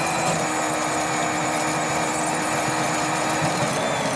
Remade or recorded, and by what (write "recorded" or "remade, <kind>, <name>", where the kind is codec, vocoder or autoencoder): recorded